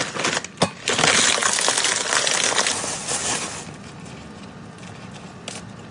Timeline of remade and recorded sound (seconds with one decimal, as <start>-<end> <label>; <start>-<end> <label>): 0.0-5.9 recorded